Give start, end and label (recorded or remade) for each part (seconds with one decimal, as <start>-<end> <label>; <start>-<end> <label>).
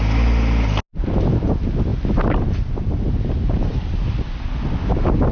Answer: 0.0-5.3 recorded